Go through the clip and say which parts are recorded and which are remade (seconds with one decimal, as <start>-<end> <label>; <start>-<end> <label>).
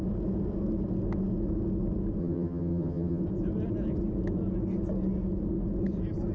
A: 0.0-2.2 recorded; 2.2-3.2 remade; 3.2-6.3 recorded